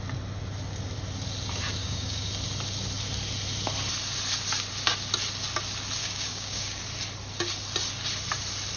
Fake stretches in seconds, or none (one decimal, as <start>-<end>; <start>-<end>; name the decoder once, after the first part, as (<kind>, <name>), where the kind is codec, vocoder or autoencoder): 1.8-2.3 (codec, DAC); 6.0-6.8